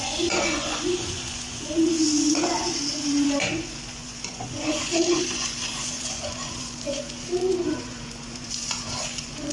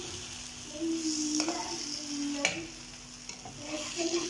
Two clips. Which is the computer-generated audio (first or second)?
first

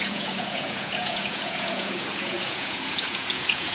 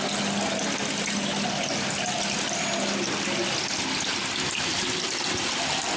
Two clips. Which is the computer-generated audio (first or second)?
first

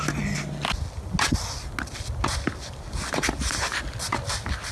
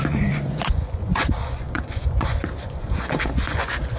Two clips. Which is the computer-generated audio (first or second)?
second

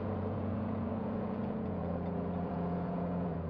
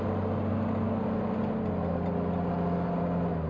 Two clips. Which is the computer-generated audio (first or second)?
first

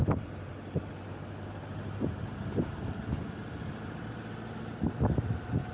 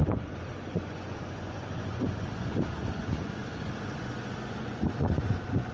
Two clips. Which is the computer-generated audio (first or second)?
second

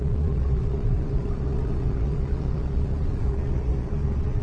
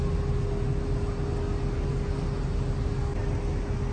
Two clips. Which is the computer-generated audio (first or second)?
first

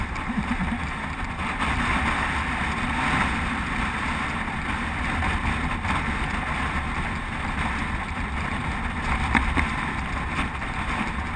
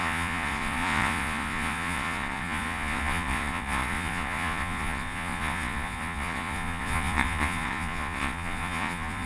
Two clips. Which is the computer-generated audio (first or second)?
second